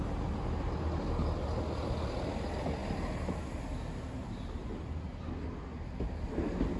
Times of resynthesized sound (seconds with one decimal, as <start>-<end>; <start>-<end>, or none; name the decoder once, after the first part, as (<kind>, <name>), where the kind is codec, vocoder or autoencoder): none